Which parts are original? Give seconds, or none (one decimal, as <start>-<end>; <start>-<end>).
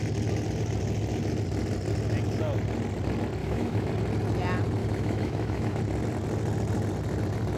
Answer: 0.0-3.4; 3.9-4.8; 5.8-7.6